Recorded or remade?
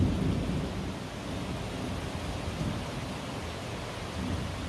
recorded